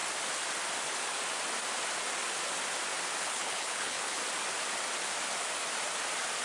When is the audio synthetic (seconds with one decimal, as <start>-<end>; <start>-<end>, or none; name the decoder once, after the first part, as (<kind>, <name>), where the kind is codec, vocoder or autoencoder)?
3.2-4.2 (codec, HILCodec)